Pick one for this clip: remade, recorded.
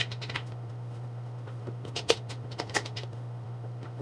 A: remade